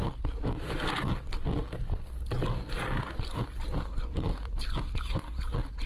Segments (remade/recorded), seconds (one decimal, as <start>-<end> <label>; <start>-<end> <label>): 0.0-1.6 recorded; 1.6-2.2 remade; 2.2-5.9 recorded